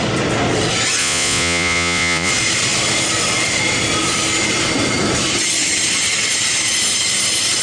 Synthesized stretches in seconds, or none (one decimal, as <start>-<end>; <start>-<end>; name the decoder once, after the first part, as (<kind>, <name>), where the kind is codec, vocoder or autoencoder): 1.0-2.3 (vocoder, Vocos)